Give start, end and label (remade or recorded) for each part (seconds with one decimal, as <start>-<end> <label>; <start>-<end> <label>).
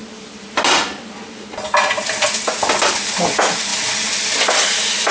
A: 0.0-5.1 recorded